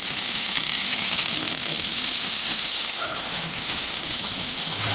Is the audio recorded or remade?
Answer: remade